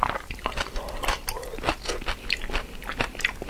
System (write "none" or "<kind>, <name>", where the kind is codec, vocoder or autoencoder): none